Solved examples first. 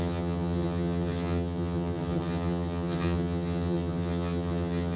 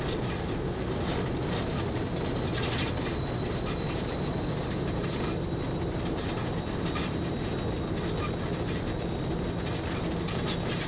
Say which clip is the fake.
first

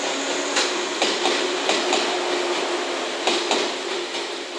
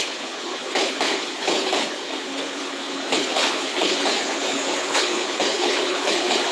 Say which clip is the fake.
second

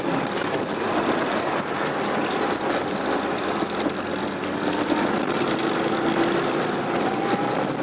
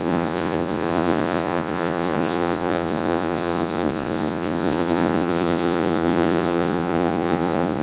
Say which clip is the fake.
second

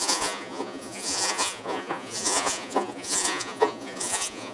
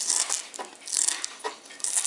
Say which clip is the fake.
first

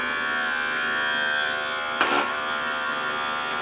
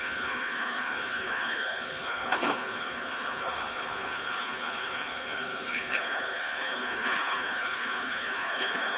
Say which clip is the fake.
second